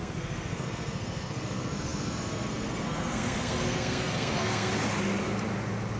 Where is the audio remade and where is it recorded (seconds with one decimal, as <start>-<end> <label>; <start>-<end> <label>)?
0.0-4.7 remade; 4.7-6.0 recorded